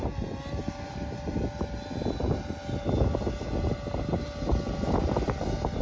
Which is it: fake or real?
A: real